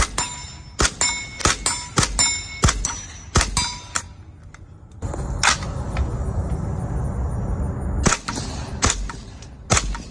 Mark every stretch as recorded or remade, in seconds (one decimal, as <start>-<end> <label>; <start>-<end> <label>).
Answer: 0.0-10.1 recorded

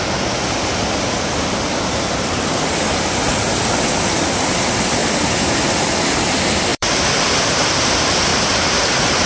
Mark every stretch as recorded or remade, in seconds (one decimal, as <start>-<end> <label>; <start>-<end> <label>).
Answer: 0.0-5.0 recorded; 5.0-6.1 remade; 6.1-6.7 recorded; 6.7-7.9 remade; 7.9-8.3 recorded; 8.3-8.9 remade; 8.9-9.3 recorded

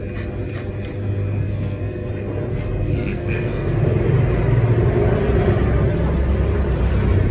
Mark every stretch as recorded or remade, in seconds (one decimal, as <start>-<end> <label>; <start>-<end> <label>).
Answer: 0.0-1.4 recorded; 1.4-2.1 remade; 2.1-2.5 recorded; 2.5-3.8 remade; 3.8-7.3 recorded

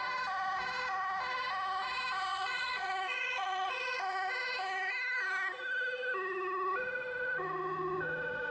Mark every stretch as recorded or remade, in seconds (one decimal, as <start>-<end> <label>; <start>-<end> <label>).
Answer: 0.0-2.3 recorded; 2.3-4.3 remade; 4.3-8.5 recorded